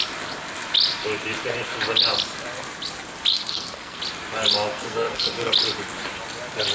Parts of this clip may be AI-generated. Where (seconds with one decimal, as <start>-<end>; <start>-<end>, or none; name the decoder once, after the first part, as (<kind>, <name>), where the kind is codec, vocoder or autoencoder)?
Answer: 3.3-4.0 (codec, SNAC); 4.7-5.5